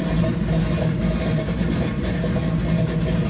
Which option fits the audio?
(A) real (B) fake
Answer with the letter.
B